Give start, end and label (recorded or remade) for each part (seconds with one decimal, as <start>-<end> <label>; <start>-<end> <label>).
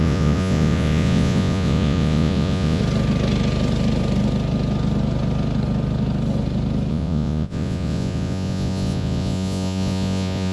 0.0-2.8 remade; 2.8-6.9 recorded; 6.9-10.5 remade